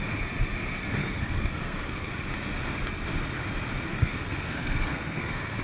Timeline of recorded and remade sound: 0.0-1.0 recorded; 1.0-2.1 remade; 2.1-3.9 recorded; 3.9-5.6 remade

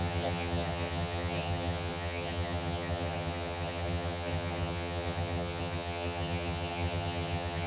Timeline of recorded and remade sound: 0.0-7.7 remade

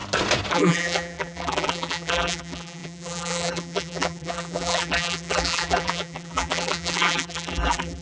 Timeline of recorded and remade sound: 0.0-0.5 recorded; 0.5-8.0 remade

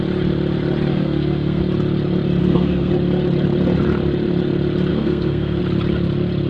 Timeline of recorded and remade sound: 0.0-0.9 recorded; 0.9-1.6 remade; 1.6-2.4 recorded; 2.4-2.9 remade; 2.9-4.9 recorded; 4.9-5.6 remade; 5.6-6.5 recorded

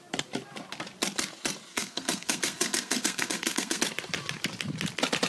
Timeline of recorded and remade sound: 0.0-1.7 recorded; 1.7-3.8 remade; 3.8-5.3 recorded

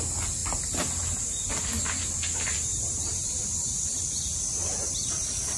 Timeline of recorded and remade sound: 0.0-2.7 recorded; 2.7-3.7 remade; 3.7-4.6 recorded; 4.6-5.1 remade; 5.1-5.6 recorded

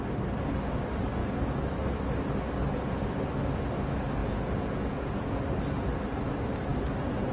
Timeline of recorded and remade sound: 0.0-4.2 recorded; 4.2-5.4 remade; 5.4-7.3 recorded